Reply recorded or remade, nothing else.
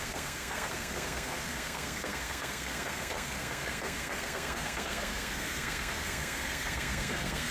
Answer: remade